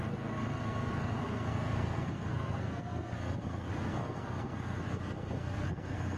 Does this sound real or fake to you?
fake